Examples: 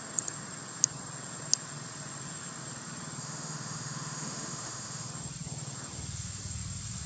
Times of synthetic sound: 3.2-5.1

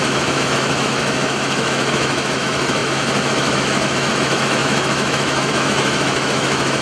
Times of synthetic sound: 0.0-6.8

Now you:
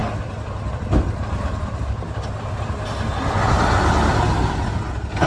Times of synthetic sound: none

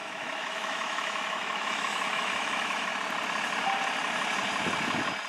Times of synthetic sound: 0.0-2.9

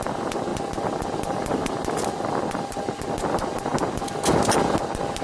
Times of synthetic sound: none